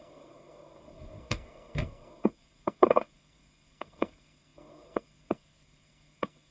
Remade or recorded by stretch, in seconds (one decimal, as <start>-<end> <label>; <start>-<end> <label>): 0.0-6.5 remade